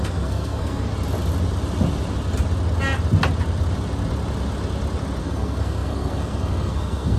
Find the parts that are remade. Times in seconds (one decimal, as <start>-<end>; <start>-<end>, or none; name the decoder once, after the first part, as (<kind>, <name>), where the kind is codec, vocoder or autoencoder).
0.0-0.9 (codec, SNAC); 5.2-7.2